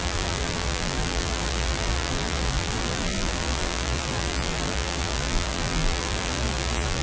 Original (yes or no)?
no